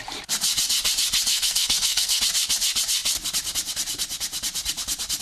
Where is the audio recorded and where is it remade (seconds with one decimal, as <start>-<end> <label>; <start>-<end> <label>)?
0.0-1.3 recorded; 1.3-2.2 remade; 2.2-5.2 recorded